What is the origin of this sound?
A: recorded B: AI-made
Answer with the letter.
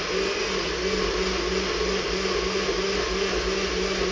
A